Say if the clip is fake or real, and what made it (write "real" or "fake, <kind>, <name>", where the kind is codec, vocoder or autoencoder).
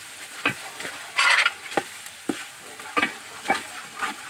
real